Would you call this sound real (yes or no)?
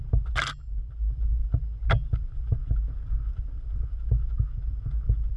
yes